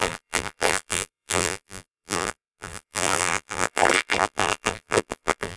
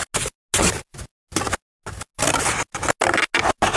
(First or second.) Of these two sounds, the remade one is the first